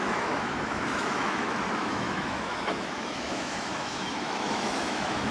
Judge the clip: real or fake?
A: fake